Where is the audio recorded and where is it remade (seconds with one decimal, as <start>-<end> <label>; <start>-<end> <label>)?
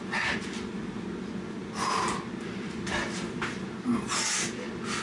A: 0.0-5.0 recorded